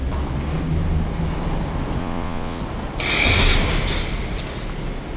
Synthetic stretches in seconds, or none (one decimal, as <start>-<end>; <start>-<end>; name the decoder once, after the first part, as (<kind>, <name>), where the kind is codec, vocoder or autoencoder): 2.0-2.6 (vocoder, Vocos)